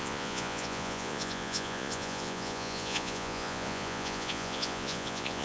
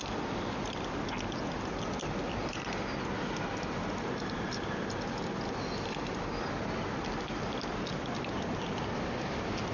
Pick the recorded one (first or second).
second